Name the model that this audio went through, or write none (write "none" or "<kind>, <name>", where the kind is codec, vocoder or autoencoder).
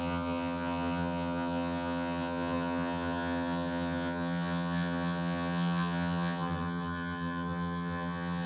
vocoder, HiFi-GAN